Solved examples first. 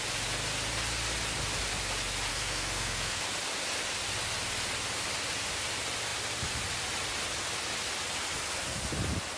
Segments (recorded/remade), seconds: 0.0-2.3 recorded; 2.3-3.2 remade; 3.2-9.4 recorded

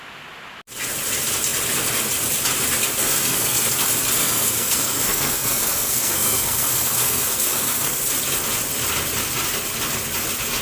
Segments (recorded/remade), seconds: 0.0-3.0 recorded; 3.0-3.7 remade; 3.7-4.2 recorded; 4.2-8.0 remade; 8.0-10.6 recorded

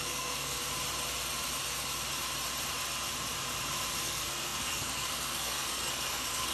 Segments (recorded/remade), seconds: 0.0-0.6 remade; 0.6-4.0 recorded; 4.0-6.5 remade